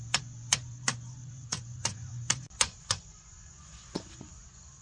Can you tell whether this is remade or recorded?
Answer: remade